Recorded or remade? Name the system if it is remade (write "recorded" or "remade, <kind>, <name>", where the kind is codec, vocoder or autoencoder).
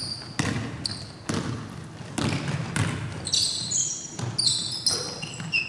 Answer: recorded